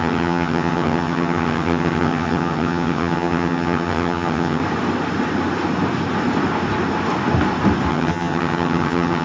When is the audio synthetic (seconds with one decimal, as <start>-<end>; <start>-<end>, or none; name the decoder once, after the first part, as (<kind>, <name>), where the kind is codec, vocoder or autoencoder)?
0.0-4.6 (vocoder, HiFi-GAN); 7.9-9.2